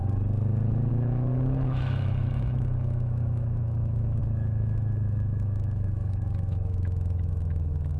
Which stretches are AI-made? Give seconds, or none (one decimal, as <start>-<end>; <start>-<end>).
0.9-8.0

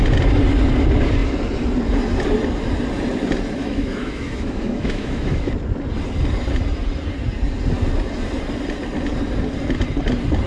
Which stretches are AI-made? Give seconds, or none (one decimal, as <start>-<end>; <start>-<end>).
3.6-5.5

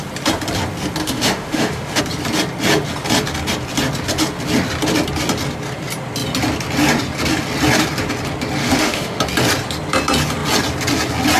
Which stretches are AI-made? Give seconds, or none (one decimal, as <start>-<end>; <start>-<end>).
1.0-2.0; 8.6-9.2

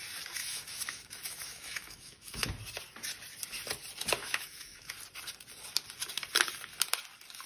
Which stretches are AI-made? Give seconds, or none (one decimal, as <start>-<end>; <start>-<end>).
0.4-2.5; 4.2-4.9

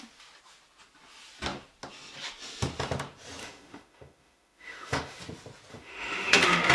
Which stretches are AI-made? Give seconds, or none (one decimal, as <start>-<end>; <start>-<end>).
3.4-5.2; 5.7-6.7

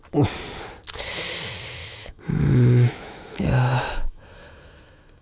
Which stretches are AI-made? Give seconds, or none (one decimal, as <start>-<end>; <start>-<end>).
1.8-5.2

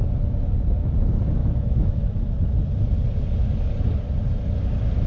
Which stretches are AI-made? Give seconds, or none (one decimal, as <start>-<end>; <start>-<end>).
1.4-2.0

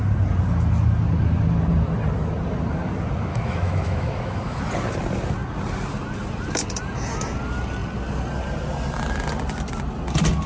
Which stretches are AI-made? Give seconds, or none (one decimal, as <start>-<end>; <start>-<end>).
3.3-4.6